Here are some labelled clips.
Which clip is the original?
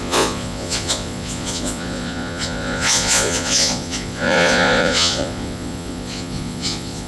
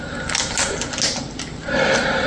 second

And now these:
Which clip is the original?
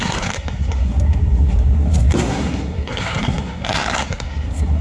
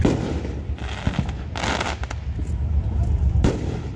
second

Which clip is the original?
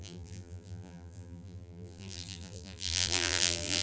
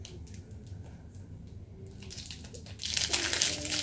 second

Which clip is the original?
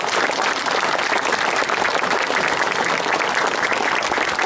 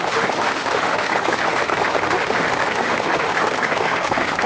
first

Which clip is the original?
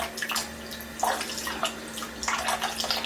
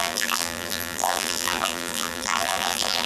first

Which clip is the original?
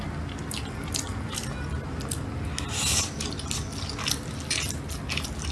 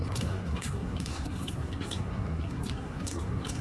first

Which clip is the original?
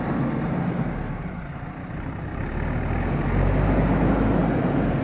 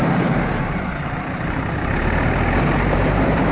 first